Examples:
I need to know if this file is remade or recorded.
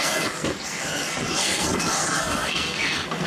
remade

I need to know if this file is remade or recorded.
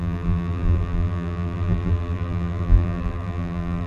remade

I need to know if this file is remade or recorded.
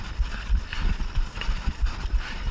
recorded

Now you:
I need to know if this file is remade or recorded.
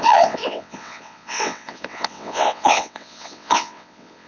remade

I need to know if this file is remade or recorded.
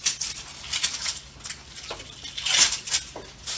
recorded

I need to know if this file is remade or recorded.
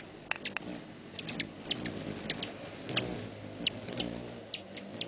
recorded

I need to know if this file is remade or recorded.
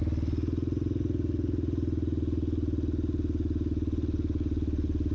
recorded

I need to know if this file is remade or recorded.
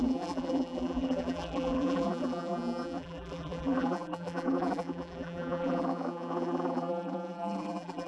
remade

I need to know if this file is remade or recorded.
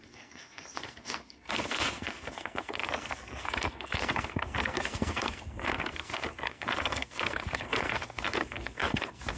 remade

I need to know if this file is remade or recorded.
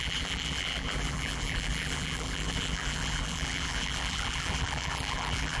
remade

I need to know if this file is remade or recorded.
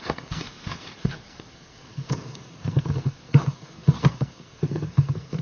remade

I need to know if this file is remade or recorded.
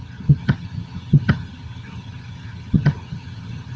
remade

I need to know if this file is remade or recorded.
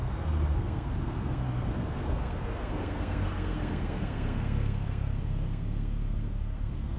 remade